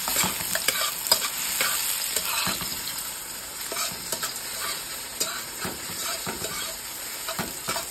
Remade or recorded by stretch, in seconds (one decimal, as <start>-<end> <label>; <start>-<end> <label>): 0.0-2.7 recorded; 2.7-7.4 remade; 7.4-7.9 recorded